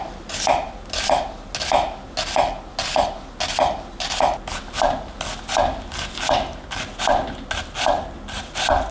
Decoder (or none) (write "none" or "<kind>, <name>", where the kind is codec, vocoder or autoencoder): none